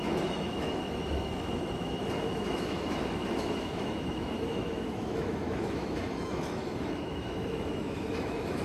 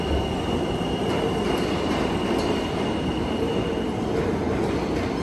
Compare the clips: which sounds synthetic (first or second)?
first